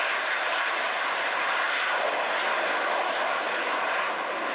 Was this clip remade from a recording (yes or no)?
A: no